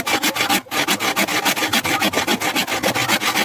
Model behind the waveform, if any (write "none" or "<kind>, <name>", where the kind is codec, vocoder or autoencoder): none